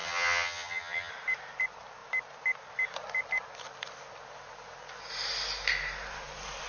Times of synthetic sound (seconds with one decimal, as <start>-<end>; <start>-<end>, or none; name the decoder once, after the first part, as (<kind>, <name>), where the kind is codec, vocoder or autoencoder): 0.0-1.1 (vocoder, HiFi-GAN)